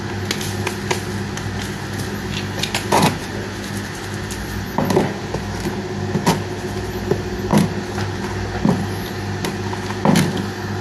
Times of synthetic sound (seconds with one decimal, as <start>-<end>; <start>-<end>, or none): none